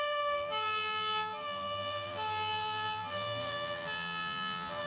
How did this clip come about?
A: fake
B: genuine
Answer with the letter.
A